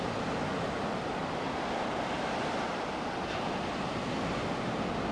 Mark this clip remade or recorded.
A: recorded